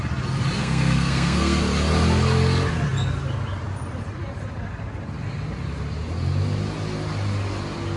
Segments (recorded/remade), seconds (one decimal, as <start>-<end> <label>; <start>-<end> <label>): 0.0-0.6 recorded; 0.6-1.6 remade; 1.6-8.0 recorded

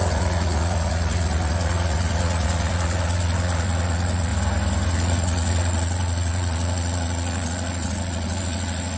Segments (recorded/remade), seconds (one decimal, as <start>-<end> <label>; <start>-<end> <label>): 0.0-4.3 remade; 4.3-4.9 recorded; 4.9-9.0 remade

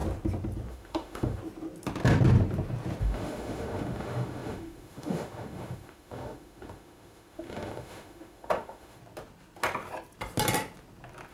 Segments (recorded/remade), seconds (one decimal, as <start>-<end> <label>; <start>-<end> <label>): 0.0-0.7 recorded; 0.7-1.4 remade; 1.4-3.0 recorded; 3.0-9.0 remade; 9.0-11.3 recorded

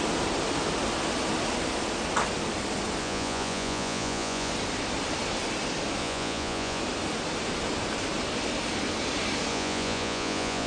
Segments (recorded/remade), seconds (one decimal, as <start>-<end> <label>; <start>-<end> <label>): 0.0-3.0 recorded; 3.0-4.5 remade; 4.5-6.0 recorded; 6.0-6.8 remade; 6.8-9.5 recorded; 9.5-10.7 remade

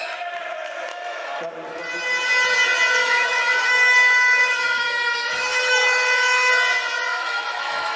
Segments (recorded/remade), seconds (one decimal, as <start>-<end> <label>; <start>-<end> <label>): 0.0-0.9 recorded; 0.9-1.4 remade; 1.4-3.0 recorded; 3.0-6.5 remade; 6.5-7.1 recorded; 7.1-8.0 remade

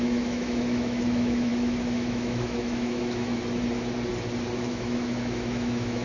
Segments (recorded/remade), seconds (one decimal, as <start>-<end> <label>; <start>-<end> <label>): 0.0-3.4 remade; 3.4-4.6 recorded; 4.6-6.0 remade